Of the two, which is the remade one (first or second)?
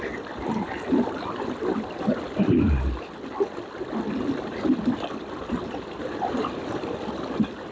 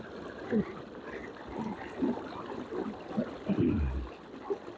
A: first